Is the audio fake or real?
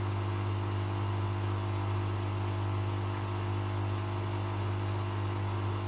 real